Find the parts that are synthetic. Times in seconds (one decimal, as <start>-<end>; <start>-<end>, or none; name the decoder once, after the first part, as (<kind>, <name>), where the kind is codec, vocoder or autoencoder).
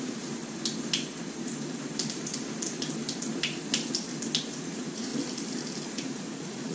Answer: 0.0-0.4 (vocoder, Vocos); 4.4-5.1; 5.9-6.7